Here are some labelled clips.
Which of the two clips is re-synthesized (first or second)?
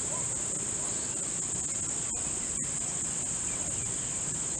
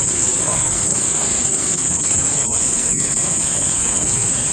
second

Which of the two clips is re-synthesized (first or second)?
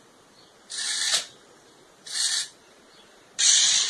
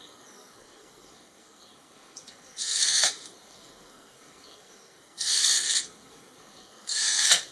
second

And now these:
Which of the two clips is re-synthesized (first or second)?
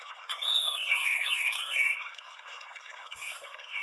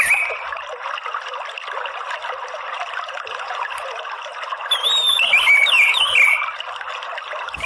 first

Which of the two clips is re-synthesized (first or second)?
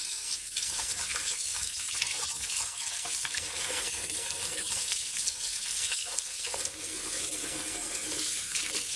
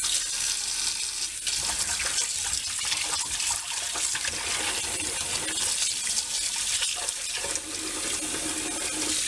first